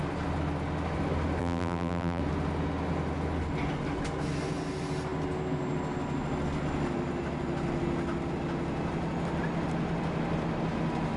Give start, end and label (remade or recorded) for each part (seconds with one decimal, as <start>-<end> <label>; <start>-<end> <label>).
0.0-1.4 recorded; 1.4-2.2 remade; 2.2-11.2 recorded